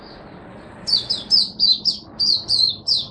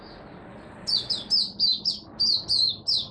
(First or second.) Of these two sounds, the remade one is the first